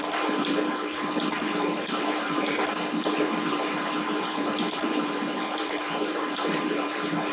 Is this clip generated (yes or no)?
yes